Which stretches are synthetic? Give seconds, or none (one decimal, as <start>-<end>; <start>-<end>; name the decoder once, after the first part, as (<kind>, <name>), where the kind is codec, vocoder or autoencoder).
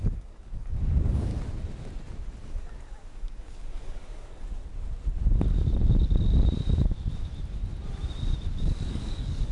0.0-1.3 (codec, DAC); 2.6-4.6; 8.6-9.5